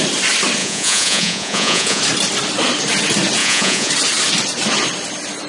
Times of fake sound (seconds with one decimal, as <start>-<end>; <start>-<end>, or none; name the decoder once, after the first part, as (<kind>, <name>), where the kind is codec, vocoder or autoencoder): 0.6-2.0 (vocoder, Vocos); 3.4-3.9